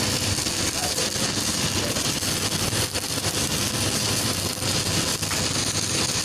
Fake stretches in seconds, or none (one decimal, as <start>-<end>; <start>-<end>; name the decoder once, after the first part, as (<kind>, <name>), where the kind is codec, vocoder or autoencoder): 0.0-0.8 (vocoder, BigVGAN v2); 3.2-5.1; 5.7-6.2